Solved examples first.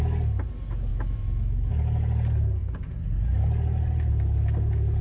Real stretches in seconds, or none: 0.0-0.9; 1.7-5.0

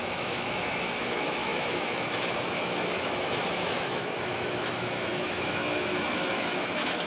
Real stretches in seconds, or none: none

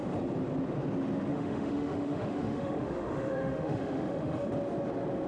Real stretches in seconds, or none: 0.0-1.3; 4.5-5.3

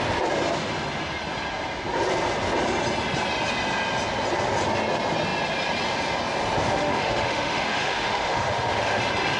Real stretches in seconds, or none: 0.0-6.7; 9.0-9.4

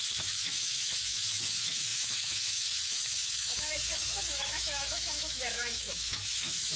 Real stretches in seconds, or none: none

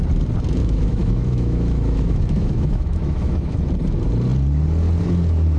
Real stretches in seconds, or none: 0.0-0.6; 3.6-5.6

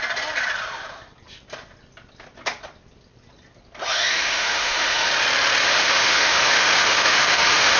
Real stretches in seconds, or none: 0.0-3.9; 5.1-5.6